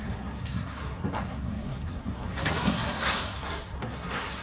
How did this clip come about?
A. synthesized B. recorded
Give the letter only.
A